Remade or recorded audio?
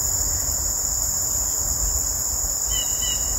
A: remade